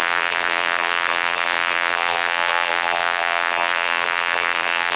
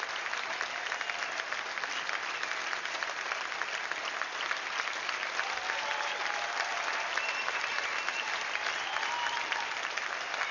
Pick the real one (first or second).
second